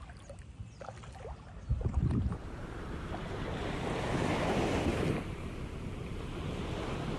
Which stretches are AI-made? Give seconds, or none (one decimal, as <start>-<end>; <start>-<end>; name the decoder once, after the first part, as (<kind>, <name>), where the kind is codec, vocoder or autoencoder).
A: 1.8-5.5 (vocoder, BigVGAN v2); 6.0-6.7